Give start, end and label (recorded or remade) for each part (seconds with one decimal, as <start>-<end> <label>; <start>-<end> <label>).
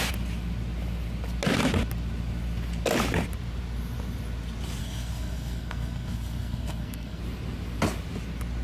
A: 0.0-4.8 recorded; 4.8-7.2 remade; 7.2-8.6 recorded